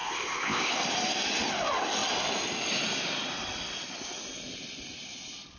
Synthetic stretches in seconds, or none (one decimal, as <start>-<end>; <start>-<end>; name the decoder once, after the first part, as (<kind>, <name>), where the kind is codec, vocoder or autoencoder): 0.0-0.7 (codec, ZipCodec)